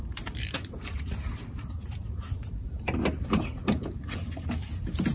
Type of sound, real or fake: fake